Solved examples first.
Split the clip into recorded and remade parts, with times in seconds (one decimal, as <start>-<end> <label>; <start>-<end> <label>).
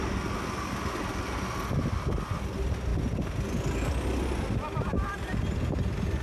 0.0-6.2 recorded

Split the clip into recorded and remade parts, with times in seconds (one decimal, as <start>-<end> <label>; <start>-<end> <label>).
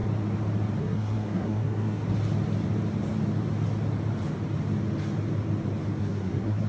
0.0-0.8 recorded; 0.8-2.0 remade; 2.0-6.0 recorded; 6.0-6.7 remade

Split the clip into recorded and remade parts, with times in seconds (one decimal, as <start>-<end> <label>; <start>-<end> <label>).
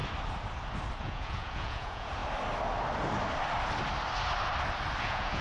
0.0-1.0 recorded; 1.0-2.2 remade; 2.2-5.0 recorded; 5.0-5.4 remade